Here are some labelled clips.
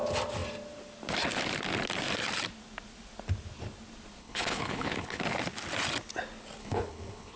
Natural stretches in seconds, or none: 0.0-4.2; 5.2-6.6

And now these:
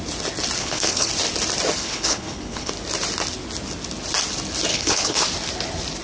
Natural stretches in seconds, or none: 0.0-0.6; 1.1-1.8; 2.7-4.7; 5.2-6.0

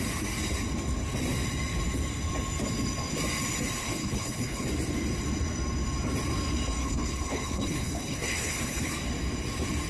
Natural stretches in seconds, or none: 0.0-3.8; 4.7-6.8; 8.9-9.9

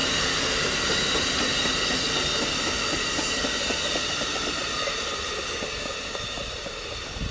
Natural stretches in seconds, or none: 0.0-7.3

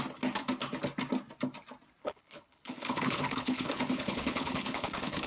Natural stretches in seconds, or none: 0.0-2.0

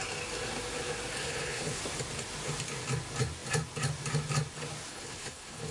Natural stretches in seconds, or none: 0.0-1.2; 1.8-4.9

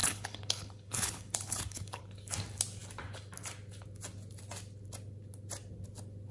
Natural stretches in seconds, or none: 2.0-6.3

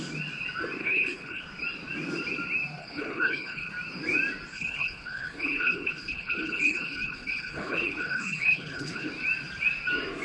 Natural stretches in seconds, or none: 0.0-0.8; 1.4-2.8; 3.7-4.5; 9.1-10.2